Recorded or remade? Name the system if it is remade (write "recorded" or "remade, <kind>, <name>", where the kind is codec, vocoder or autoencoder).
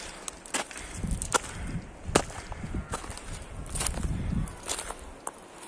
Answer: recorded